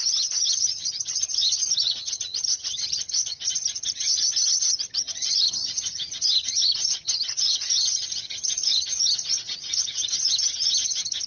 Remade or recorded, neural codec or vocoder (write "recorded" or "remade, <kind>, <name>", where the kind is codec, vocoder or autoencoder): remade, vocoder, HiFi-GAN